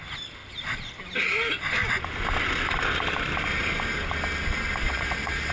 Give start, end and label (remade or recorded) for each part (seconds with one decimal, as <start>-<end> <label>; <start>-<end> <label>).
0.0-4.8 recorded; 4.8-5.5 remade